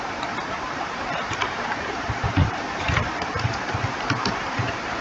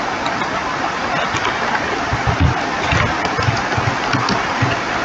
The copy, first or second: first